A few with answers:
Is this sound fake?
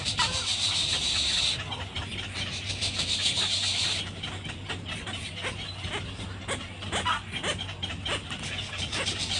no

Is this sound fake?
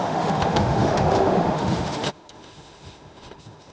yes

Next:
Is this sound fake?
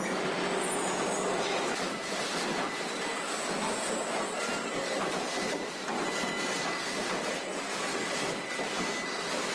no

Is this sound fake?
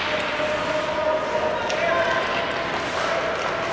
no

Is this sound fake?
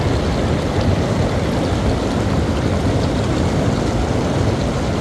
no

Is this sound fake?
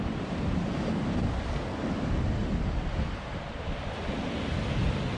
no